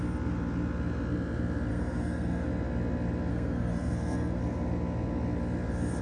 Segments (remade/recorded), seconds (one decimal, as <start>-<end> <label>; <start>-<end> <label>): 0.0-1.7 recorded; 1.7-2.5 remade; 2.5-3.3 recorded; 3.3-4.4 remade; 4.4-6.0 recorded